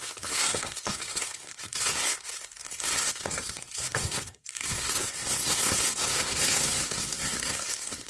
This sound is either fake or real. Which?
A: fake